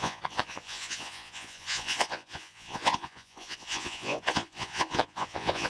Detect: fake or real fake